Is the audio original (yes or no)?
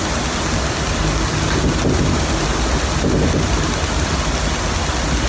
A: yes